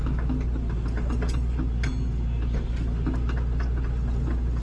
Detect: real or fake real